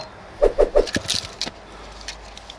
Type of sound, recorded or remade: recorded